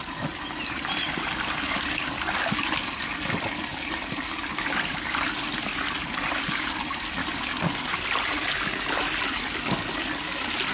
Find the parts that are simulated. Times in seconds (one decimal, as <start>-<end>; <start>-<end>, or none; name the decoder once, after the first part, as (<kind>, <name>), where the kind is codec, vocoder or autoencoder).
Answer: none